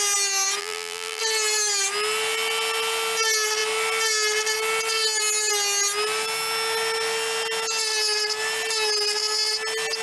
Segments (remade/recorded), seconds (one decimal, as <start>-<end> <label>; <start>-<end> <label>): 0.0-0.6 recorded; 0.6-1.2 remade; 1.2-10.0 recorded